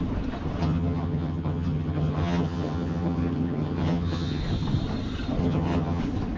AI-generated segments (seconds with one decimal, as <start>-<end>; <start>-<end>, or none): 0.6-4.4; 5.4-6.0